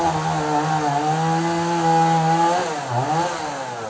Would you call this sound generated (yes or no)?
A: no